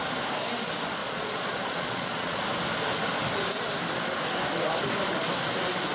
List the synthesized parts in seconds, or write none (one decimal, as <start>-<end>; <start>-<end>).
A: 1.0-2.4